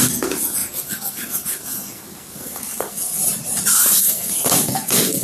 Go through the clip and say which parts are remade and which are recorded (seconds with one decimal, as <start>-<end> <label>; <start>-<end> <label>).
0.0-3.2 remade; 3.2-4.0 recorded; 4.0-5.2 remade